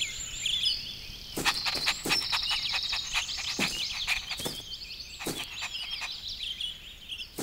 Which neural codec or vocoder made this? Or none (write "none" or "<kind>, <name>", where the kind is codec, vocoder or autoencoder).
vocoder, BigVGAN v2